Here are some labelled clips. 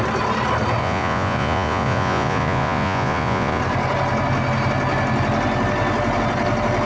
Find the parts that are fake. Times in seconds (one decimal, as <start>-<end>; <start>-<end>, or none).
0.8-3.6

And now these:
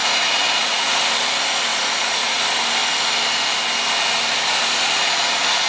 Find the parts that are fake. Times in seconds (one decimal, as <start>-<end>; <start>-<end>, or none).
0.0-1.0; 1.7-2.4

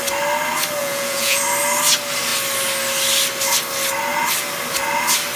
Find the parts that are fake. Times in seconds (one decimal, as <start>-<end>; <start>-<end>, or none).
0.8-1.4

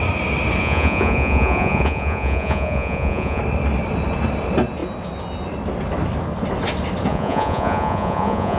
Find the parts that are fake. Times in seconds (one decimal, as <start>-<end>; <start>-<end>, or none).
0.6-3.4; 7.1-8.6

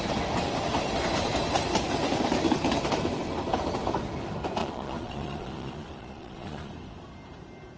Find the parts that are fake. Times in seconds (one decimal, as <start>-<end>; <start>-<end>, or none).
4.6-6.7